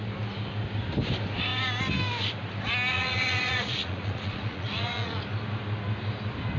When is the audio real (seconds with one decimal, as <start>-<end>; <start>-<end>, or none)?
0.0-2.9; 5.2-6.6